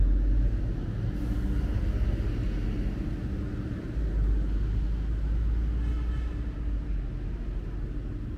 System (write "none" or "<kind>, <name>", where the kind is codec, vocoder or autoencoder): none